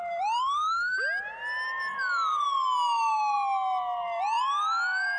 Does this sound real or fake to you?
real